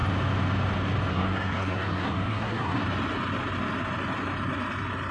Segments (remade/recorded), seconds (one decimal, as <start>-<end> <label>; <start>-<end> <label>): 0.0-1.1 recorded; 1.1-2.8 remade; 2.8-5.1 recorded